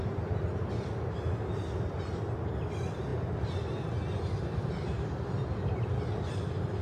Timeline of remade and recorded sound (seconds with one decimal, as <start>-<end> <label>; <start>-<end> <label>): 0.0-6.8 recorded